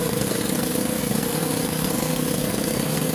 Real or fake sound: fake